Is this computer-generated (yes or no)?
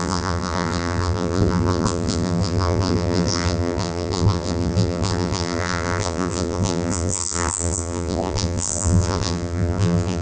yes